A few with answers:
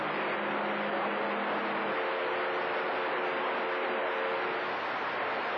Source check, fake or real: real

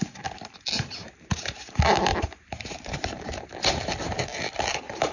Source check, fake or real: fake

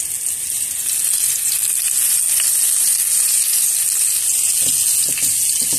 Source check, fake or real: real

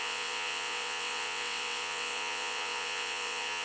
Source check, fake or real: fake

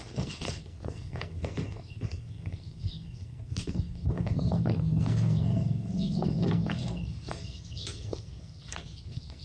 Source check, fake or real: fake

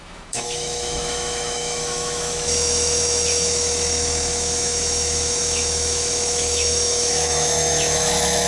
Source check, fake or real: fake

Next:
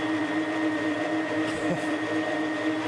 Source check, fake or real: fake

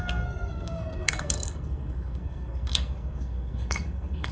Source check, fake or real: fake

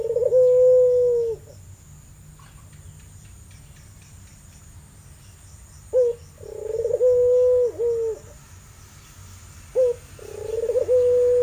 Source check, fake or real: real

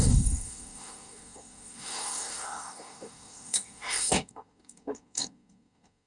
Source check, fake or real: fake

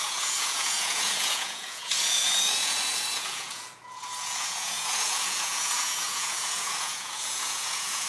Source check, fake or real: fake